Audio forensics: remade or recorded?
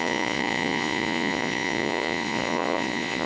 remade